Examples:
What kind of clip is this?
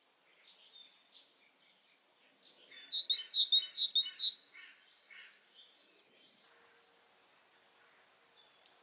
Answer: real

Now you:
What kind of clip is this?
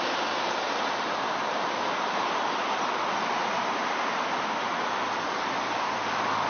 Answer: real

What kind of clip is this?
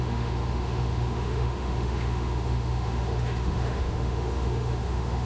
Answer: fake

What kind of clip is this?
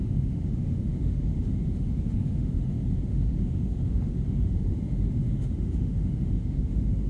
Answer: fake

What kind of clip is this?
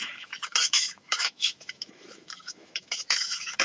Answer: fake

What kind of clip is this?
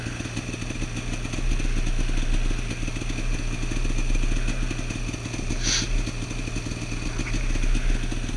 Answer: real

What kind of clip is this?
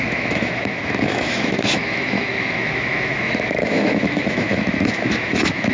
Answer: fake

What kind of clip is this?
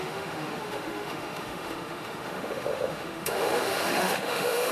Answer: fake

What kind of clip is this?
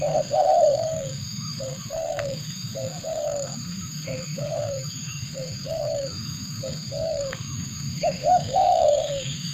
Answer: fake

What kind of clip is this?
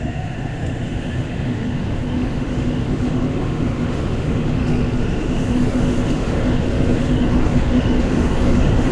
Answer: fake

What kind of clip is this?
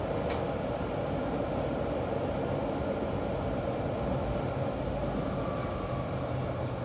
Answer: real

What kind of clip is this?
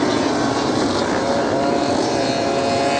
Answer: real